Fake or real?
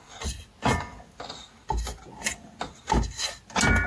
real